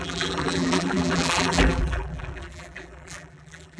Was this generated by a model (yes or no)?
yes